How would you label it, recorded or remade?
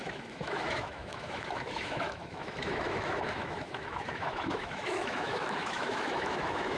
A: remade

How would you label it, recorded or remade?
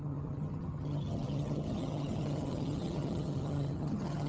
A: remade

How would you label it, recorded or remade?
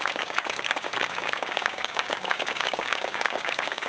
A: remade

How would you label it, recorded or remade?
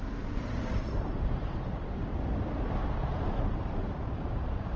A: remade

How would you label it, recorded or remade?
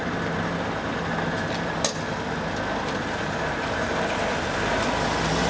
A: recorded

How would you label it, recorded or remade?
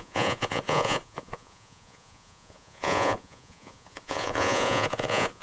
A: remade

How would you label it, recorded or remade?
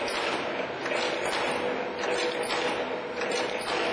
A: recorded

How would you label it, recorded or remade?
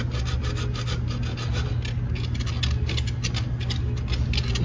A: recorded